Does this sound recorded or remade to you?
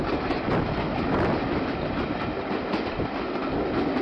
recorded